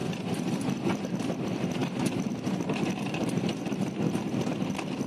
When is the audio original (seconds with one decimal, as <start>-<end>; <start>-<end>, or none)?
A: 0.0-5.1